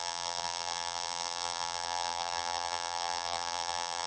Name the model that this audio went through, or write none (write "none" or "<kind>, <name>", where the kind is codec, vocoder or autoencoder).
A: vocoder, BigVGAN v2